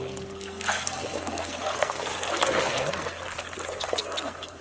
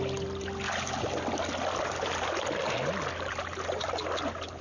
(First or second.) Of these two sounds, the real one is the second